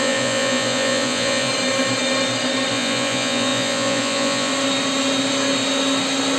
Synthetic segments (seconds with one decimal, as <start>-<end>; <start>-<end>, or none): 0.0-1.5; 2.7-4.5